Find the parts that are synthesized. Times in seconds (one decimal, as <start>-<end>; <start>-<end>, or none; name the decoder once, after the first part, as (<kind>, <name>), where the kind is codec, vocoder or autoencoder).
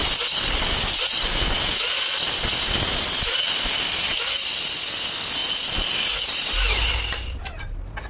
none